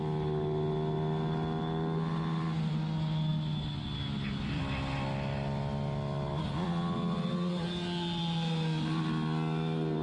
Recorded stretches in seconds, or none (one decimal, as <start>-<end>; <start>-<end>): 0.0-10.0